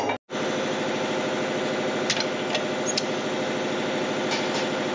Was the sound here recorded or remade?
recorded